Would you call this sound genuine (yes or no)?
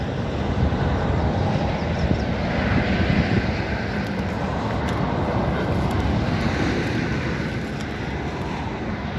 yes